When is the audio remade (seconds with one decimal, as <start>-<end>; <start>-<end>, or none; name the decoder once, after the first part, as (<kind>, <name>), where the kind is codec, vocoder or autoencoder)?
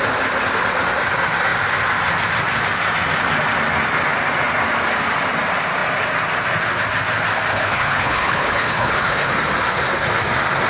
7.5-9.3 (codec, HILCodec)